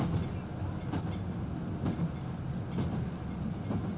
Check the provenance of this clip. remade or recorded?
recorded